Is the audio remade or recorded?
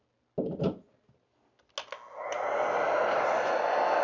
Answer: recorded